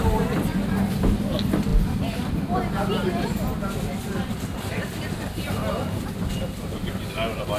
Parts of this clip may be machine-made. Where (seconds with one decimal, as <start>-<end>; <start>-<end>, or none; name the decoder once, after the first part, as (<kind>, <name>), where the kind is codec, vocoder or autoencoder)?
1.7-6.1 (vocoder, BigVGAN v2)